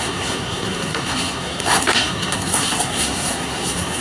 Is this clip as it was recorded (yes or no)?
no